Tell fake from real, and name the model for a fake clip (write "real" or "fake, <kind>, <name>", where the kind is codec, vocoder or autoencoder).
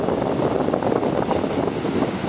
real